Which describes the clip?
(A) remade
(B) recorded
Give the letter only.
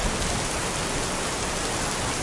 B